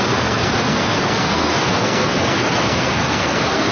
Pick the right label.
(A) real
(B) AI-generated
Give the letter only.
B